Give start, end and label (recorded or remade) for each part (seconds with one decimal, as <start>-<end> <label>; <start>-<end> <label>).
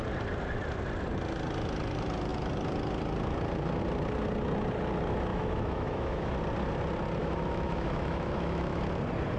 0.0-5.3 recorded; 5.3-6.3 remade; 6.3-7.2 recorded; 7.2-8.8 remade; 8.8-9.4 recorded